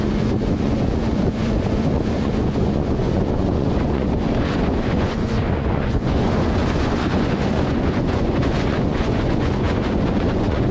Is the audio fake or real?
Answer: fake